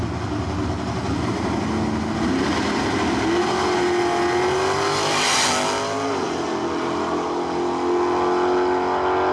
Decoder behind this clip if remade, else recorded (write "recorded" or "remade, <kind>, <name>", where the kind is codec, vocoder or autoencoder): recorded